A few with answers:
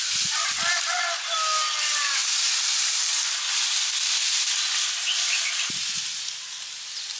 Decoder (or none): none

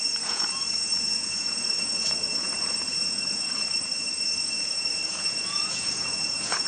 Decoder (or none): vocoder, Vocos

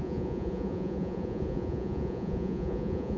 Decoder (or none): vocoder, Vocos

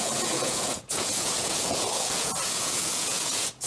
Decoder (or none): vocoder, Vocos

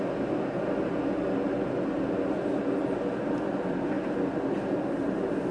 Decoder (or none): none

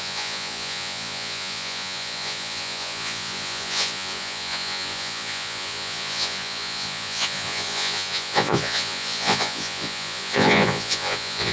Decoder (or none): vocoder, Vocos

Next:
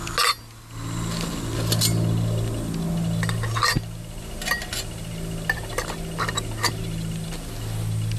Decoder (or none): none